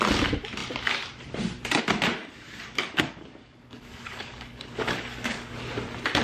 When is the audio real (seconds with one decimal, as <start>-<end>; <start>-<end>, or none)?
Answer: 0.0-2.2; 5.6-6.2